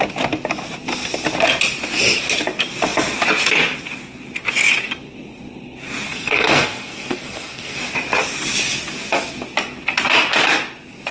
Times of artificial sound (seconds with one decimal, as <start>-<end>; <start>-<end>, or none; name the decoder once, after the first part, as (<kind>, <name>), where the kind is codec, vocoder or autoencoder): 6.1-7.8 (codec, SNAC)